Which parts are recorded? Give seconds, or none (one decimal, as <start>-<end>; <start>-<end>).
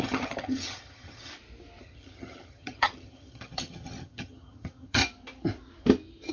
1.3-1.8; 5.0-6.3